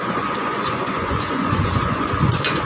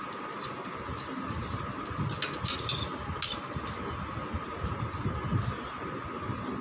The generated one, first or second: first